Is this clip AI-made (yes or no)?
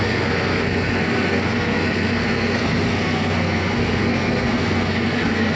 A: yes